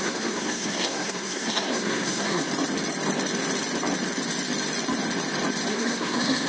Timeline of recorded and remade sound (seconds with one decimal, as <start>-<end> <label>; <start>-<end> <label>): 0.0-2.5 remade; 2.5-5.7 recorded; 5.7-6.5 remade